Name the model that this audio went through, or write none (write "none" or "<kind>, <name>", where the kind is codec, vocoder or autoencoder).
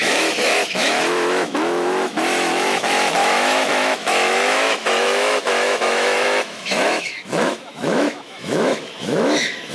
autoencoder, DAC-VAE